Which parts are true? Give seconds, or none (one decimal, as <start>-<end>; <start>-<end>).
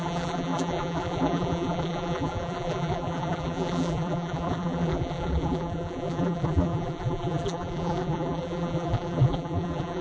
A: none